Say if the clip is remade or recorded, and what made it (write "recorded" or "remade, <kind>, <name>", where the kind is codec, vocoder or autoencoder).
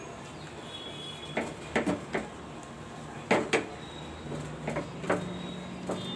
recorded